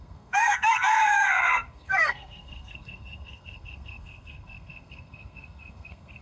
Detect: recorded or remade remade